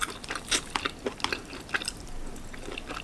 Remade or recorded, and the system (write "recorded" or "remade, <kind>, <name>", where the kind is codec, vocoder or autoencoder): recorded